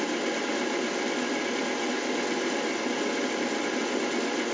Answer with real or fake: real